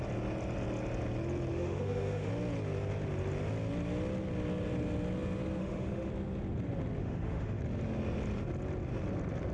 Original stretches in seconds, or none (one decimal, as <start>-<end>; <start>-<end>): 0.0-1.5; 2.3-5.6; 6.1-7.0; 7.6-9.5

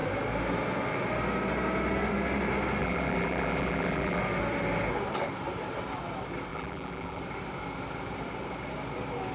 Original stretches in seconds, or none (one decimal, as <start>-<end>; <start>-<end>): 0.0-2.8; 4.2-6.5; 7.2-9.3

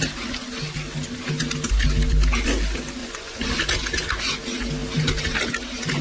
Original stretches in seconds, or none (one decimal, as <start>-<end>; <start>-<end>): 0.0-3.0; 3.5-6.0

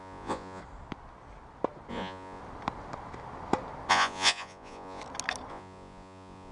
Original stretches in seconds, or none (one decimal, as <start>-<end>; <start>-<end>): 0.6-1.9; 2.4-3.9; 5.0-5.5

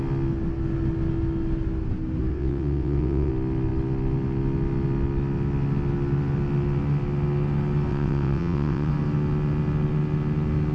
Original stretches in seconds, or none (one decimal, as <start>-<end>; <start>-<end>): 0.0-2.3; 3.3-7.9; 8.9-10.7

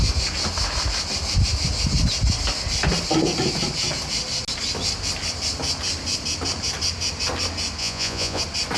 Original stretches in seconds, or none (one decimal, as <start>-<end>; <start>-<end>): 0.0-7.8; 8.4-8.8